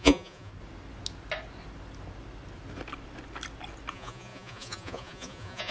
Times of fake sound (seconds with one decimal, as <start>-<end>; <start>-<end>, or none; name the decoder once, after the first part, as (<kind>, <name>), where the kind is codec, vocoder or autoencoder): 0.0-0.5 (vocoder, Vocos); 3.9-5.7

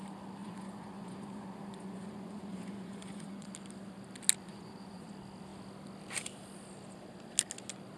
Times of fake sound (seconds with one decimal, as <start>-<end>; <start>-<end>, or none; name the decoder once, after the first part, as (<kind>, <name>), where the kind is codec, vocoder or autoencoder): 0.4-3.5 (vocoder, Vocos); 4.5-5.1